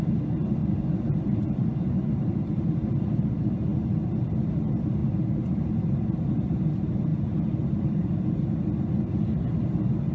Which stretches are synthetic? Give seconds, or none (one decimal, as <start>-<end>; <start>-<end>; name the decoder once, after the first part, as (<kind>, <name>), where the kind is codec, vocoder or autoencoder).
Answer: 0.6-3.2 (vocoder, BigVGAN v2)